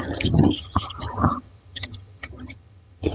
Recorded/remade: remade